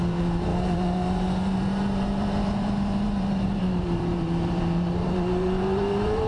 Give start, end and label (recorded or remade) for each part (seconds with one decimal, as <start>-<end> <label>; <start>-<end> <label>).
0.0-6.3 remade